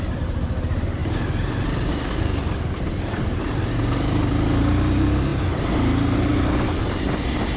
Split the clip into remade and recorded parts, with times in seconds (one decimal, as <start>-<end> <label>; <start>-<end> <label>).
0.0-7.6 recorded